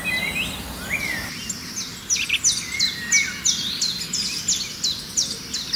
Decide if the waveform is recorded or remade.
recorded